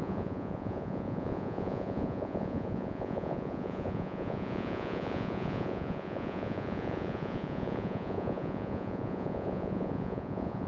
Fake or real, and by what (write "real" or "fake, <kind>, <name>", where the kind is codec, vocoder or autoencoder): fake, vocoder, Vocos